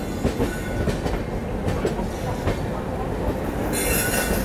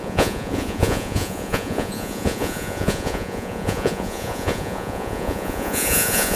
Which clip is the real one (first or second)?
first